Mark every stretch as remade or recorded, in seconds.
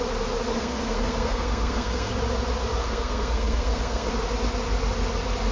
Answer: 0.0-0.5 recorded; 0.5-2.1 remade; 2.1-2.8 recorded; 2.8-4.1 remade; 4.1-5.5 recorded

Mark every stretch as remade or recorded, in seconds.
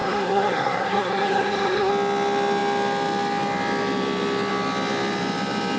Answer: 0.0-1.9 remade; 1.9-5.8 recorded